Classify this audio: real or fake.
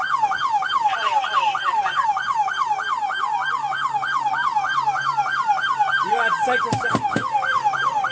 real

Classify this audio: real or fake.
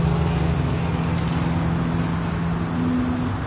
real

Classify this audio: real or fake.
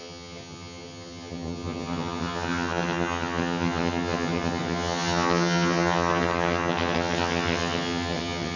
fake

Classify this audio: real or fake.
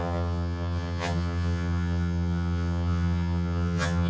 fake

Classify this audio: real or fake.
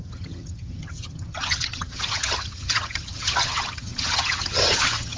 fake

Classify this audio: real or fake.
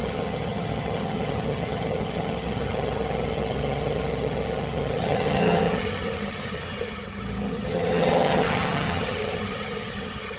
fake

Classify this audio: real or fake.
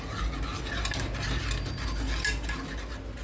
real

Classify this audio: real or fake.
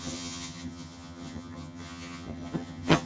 fake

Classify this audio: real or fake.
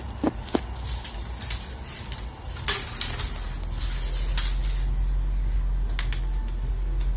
real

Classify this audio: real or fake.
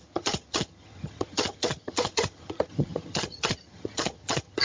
fake